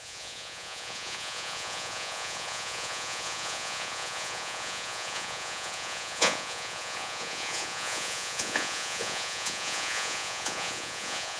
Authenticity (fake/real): fake